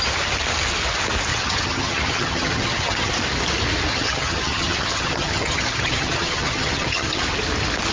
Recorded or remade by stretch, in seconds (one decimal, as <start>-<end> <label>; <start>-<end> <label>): 0.0-1.3 recorded; 1.3-3.1 remade; 3.1-3.9 recorded; 3.9-7.2 remade; 7.2-7.9 recorded